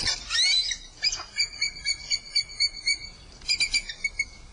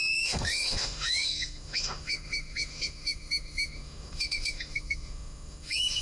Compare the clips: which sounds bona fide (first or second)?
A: first